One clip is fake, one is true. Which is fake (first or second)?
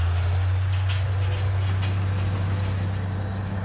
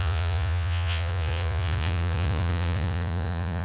second